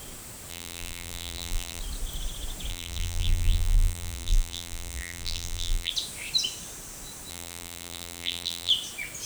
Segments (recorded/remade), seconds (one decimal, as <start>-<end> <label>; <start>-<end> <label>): 0.0-0.5 recorded; 0.5-1.8 remade; 1.8-2.7 recorded; 2.7-5.9 remade; 5.9-7.3 recorded; 7.3-8.7 remade; 8.7-9.3 recorded